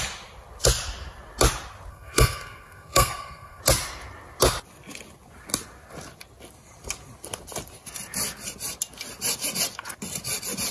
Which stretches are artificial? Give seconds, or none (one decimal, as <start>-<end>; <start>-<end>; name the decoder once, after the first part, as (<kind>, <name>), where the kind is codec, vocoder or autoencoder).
1.9-3.6 (codec, SNAC)